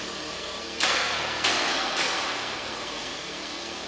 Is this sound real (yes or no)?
no